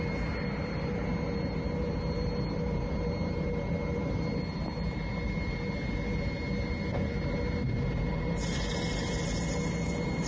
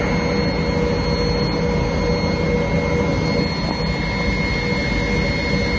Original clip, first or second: second